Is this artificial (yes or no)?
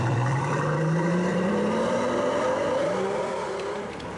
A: yes